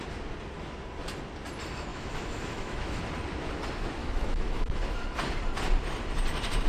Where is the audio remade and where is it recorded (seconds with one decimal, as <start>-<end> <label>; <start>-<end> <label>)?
0.0-1.9 recorded; 1.9-3.0 remade; 3.0-4.0 recorded; 4.0-4.8 remade; 4.8-6.7 recorded

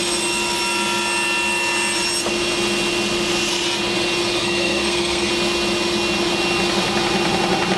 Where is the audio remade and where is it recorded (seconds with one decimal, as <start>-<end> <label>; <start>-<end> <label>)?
0.0-4.4 recorded; 4.4-5.3 remade; 5.3-7.8 recorded

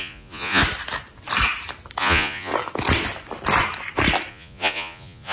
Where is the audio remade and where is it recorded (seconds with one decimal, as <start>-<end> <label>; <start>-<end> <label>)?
0.0-0.6 remade; 0.6-2.0 recorded; 2.0-2.5 remade; 2.5-4.3 recorded; 4.3-5.3 remade

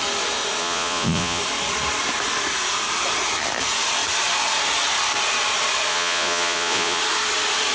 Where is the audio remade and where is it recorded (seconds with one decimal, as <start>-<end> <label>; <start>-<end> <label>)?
0.0-0.6 recorded; 0.6-1.4 remade; 1.4-5.9 recorded; 5.9-7.0 remade; 7.0-7.7 recorded

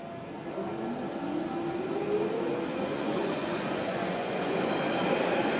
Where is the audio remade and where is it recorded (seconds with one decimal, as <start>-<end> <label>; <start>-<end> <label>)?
0.0-2.7 recorded; 2.7-4.7 remade; 4.7-5.6 recorded

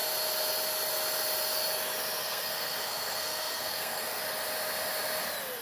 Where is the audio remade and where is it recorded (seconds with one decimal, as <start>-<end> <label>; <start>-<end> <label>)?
0.0-2.2 recorded; 2.2-4.2 remade; 4.2-5.6 recorded